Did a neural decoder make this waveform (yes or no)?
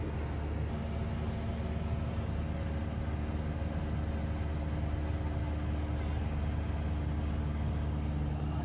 no